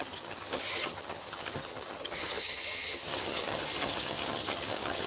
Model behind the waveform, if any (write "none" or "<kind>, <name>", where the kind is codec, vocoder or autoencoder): vocoder, HiFi-GAN